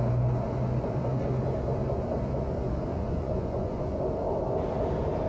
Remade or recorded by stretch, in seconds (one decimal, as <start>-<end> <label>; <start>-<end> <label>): 0.0-2.9 recorded; 2.9-4.0 remade; 4.0-5.3 recorded